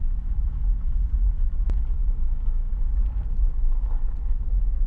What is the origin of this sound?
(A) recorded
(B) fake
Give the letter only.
A